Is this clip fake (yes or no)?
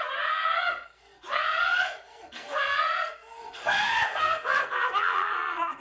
yes